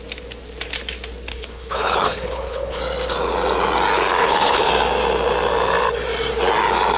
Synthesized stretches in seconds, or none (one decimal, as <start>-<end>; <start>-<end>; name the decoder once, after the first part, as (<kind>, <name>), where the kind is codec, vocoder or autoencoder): 1.3-2.8 (codec, HILCodec); 4.2-4.7